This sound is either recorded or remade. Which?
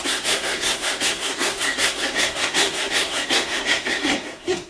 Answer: remade